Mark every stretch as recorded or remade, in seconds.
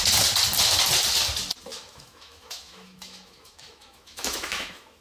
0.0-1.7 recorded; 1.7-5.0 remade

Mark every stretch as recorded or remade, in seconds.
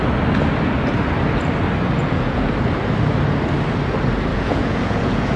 0.0-2.0 recorded; 2.0-2.5 remade; 2.5-4.3 recorded; 4.3-5.4 remade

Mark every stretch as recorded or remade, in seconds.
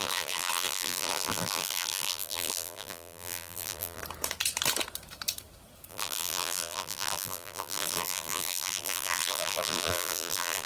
0.0-4.0 remade; 4.0-5.9 recorded; 5.9-10.7 remade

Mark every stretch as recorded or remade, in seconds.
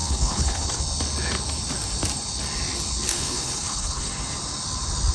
0.0-0.8 remade; 0.8-3.1 recorded; 3.1-4.1 remade; 4.1-5.1 recorded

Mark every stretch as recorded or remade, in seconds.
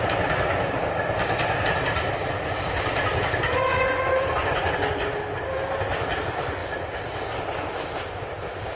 0.0-3.7 recorded; 3.7-4.9 remade; 4.9-8.8 recorded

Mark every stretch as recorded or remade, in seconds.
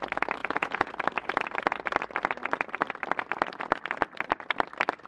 0.0-0.4 recorded; 0.4-0.9 remade; 0.9-5.1 recorded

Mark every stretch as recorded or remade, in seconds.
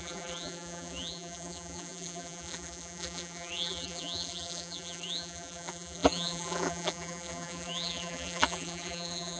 0.0-9.4 remade